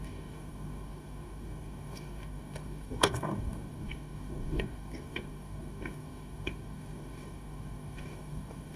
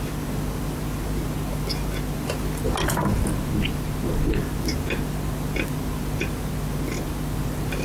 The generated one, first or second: first